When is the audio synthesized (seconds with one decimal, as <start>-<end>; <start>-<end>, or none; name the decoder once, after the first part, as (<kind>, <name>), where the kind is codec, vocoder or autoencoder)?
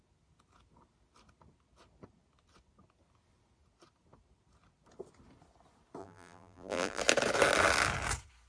6.0-7.0 (vocoder, BigVGAN v2)